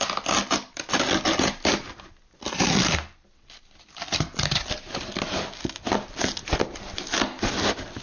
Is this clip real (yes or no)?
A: yes